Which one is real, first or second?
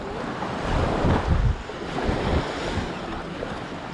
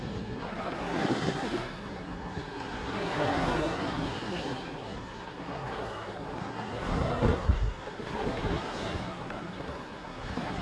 first